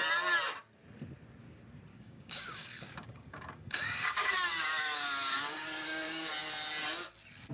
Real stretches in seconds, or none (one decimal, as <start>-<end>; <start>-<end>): 0.0-1.9; 6.3-7.5

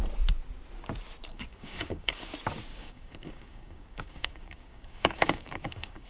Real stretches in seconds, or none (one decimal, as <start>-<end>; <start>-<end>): 0.0-1.3; 2.3-2.7